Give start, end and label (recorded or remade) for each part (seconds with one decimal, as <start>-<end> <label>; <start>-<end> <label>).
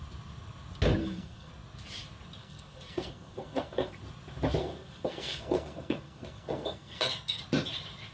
0.0-1.0 recorded; 1.0-1.5 remade; 1.5-2.4 recorded; 2.4-4.0 remade; 4.0-4.6 recorded; 4.6-7.4 remade; 7.4-8.1 recorded